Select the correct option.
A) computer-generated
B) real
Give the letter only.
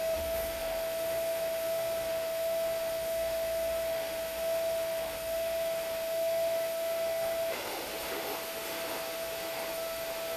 A